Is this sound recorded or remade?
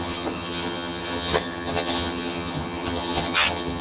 remade